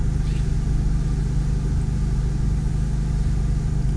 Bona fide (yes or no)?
yes